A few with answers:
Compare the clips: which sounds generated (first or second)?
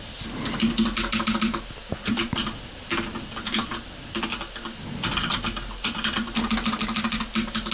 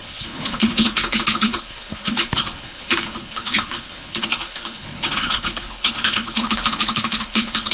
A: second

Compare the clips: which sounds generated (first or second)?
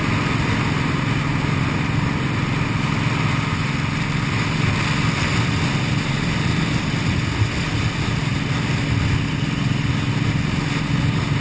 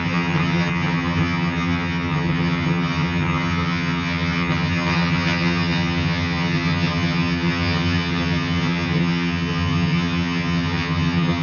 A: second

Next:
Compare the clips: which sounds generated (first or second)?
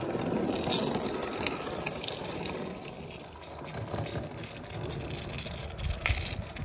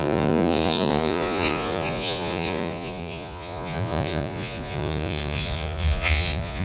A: second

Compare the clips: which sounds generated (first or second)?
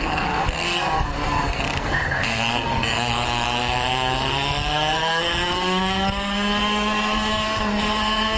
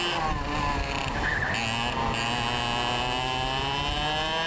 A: first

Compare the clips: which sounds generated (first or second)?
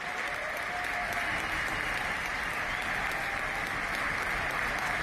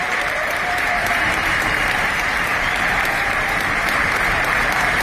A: second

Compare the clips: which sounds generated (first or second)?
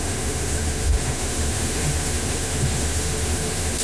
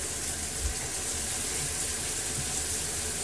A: first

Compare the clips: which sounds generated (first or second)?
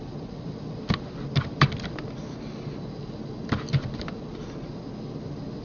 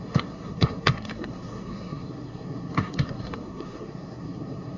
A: second